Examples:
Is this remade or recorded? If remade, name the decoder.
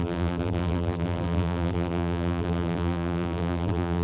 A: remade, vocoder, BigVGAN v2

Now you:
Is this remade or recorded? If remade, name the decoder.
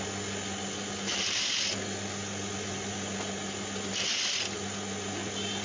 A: recorded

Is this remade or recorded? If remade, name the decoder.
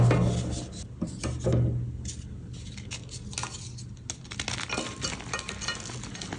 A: recorded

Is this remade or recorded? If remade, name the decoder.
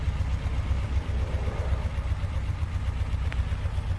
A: remade, vocoder, BigVGAN v2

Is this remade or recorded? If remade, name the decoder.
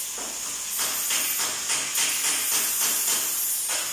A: recorded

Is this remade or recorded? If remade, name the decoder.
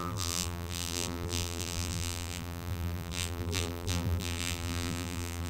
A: remade, vocoder, BigVGAN v2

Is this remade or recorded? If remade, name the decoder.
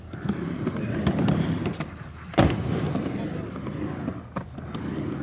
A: recorded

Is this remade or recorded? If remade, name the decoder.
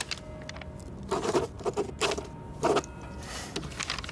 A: recorded